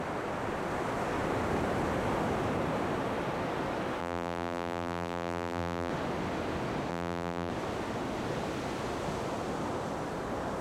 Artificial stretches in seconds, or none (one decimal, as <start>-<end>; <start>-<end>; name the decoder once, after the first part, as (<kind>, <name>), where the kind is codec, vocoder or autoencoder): 4.0-5.9 (vocoder, BigVGAN v2); 6.9-7.5